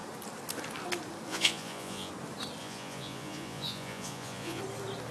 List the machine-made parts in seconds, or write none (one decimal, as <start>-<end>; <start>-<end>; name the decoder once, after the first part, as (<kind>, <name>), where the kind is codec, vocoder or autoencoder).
1.3-2.1 (vocoder, Vocos); 2.6-4.6